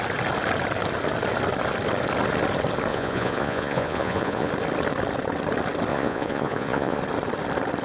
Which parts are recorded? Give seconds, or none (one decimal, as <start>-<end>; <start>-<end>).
0.0-2.9; 4.5-5.9; 7.0-7.8